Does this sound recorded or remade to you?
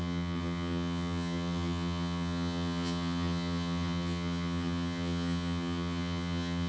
remade